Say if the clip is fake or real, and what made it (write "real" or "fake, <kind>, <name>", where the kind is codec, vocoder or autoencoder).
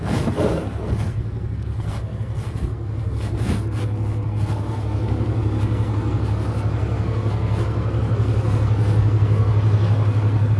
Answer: fake, codec, SNAC